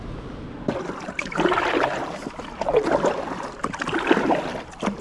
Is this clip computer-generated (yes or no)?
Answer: no